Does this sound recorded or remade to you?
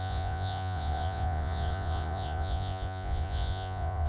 remade